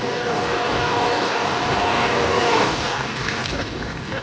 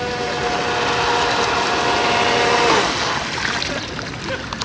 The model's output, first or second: first